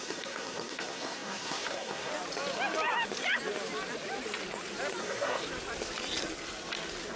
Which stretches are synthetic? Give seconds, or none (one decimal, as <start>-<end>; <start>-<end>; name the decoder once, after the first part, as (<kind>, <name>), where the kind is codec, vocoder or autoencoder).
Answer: 0.0-2.1 (codec, SNAC); 5.0-5.4